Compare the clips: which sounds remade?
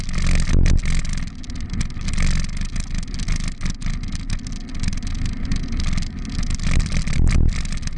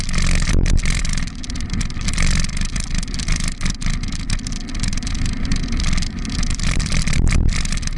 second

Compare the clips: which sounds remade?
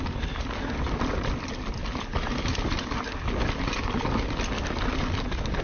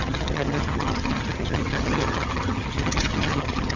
second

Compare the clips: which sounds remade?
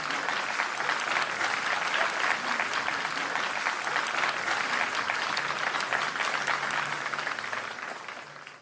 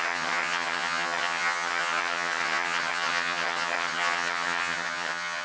second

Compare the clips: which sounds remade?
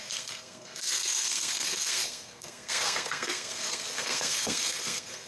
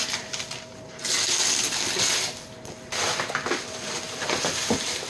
first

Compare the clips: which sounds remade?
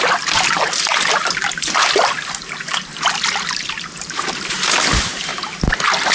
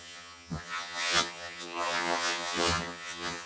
second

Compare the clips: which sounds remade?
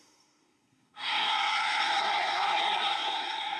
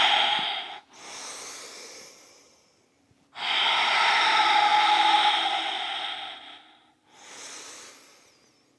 first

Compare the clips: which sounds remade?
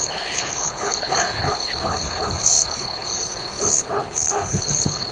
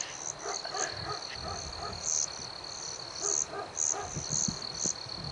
first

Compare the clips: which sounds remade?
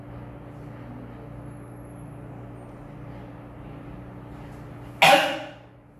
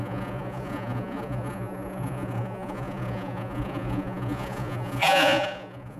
second